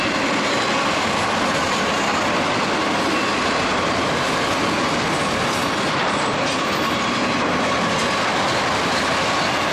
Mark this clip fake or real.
real